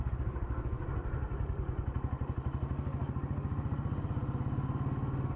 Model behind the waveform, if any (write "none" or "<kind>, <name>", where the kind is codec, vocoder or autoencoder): none